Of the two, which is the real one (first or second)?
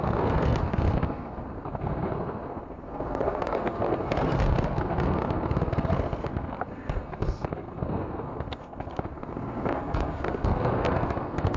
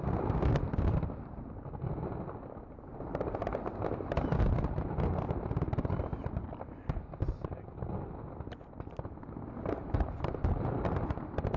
second